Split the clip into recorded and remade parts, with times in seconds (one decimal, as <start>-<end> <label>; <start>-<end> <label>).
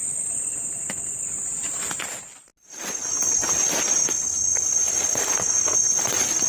0.0-6.5 recorded